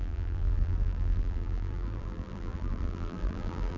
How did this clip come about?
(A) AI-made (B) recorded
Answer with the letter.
A